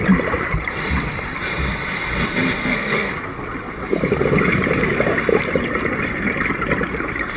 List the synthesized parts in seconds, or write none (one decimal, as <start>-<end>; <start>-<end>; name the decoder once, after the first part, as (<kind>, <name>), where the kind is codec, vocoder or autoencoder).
2.6-3.1 (codec, SNAC)